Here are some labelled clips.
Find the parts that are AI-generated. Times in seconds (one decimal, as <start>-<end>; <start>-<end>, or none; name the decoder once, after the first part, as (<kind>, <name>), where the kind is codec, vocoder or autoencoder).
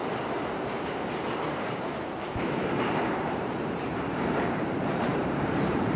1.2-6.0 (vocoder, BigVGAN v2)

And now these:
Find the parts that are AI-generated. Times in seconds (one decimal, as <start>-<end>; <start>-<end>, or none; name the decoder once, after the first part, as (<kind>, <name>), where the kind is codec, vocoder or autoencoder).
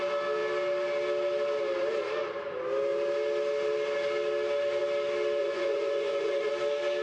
5.4-6.5 (vocoder, Vocos)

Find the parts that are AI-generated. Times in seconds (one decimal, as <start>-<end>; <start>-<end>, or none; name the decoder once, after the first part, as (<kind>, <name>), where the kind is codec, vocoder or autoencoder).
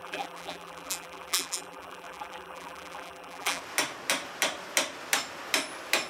0.0-3.6 (vocoder, BigVGAN v2)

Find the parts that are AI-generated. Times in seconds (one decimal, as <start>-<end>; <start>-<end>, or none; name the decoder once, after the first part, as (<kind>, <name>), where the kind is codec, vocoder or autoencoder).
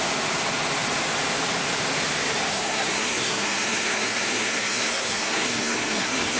2.5-6.4 (codec, SNAC)